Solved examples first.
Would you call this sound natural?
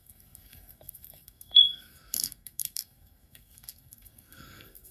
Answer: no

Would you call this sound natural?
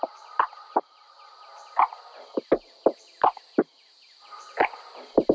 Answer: yes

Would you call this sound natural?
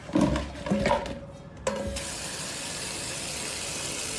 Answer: yes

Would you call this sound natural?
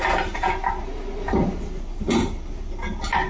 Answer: yes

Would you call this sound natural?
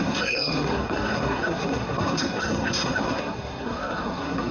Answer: no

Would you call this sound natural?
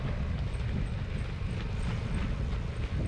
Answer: yes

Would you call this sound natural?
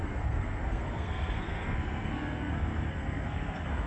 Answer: no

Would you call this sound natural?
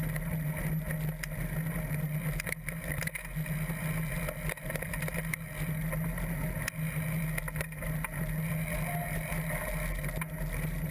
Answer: yes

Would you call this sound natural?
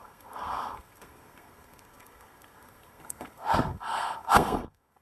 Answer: no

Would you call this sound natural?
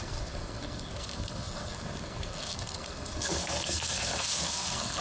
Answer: no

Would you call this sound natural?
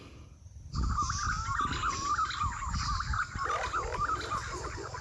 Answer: yes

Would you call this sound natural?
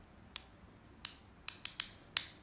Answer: yes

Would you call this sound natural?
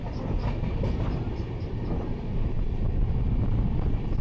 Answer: yes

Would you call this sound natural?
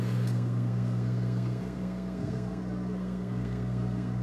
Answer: no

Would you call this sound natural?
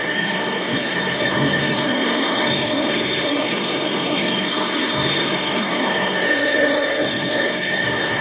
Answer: no